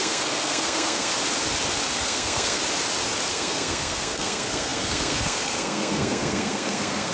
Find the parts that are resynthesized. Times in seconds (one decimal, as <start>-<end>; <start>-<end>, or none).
0.0-1.1; 2.0-2.6; 3.3-7.1